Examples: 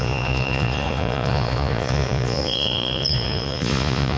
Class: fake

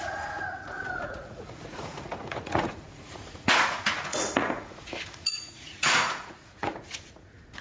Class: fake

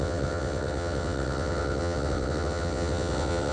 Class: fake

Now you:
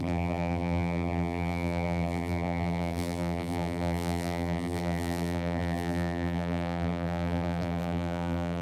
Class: fake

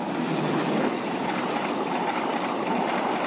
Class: real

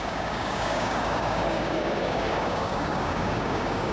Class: fake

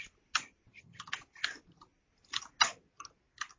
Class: real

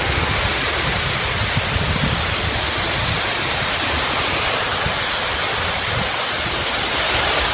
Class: real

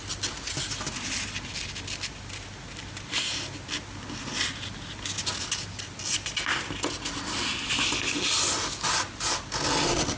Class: real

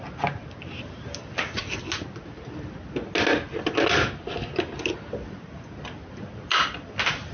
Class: real